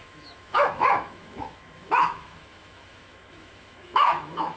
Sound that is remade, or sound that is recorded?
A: remade